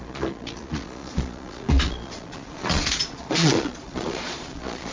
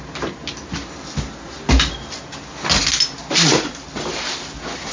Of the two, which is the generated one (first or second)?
first